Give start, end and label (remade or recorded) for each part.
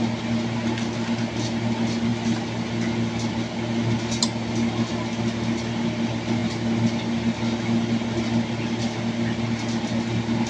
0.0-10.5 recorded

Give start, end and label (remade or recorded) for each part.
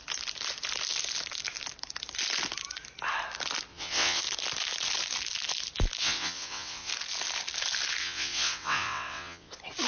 0.0-3.7 recorded; 3.7-4.2 remade; 4.2-6.0 recorded; 6.0-6.9 remade; 6.9-8.0 recorded; 8.0-9.5 remade; 9.5-9.9 recorded